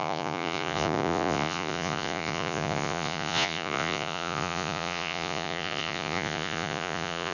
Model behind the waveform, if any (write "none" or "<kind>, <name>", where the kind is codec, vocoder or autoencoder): vocoder, Vocos